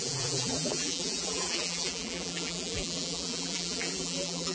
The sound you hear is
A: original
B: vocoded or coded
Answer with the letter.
B